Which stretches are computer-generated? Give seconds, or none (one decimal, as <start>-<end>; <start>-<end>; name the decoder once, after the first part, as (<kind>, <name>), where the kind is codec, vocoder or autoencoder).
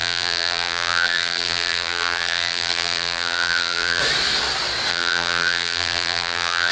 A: 0.0-4.0 (vocoder, BigVGAN v2); 4.9-6.7